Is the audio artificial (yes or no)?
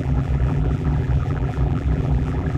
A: yes